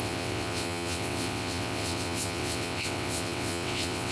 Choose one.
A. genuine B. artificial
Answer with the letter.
B